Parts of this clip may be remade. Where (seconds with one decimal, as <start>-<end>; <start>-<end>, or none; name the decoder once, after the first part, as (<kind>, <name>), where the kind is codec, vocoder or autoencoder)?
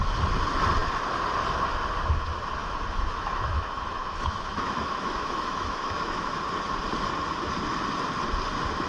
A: 2.6-6.4 (autoencoder, DAC-VAE)